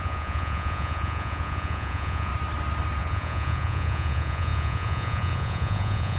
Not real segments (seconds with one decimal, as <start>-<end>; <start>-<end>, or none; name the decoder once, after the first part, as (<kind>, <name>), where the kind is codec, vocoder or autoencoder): 0.0-2.3 (vocoder, Vocos); 3.0-6.2